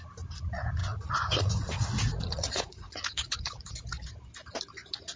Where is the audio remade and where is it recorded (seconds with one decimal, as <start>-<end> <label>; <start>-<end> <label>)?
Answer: 0.0-0.8 recorded; 0.8-3.7 remade; 3.7-5.2 recorded